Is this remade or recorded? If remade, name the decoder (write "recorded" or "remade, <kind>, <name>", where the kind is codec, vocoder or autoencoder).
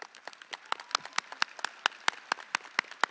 recorded